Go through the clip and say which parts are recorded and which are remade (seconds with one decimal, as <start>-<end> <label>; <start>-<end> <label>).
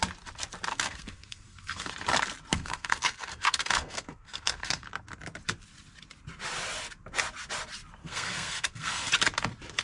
0.0-0.7 recorded; 0.7-1.9 remade; 1.9-2.5 recorded; 2.5-4.9 remade; 4.9-8.0 recorded; 8.0-9.1 remade; 9.1-9.8 recorded